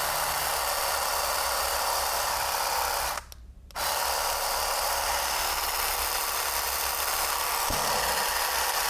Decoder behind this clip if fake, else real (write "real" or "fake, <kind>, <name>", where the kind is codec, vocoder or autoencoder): real